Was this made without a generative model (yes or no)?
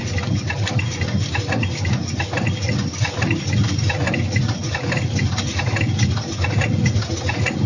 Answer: yes